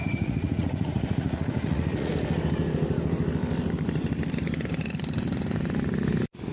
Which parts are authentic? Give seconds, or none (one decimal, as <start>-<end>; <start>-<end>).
2.1-6.5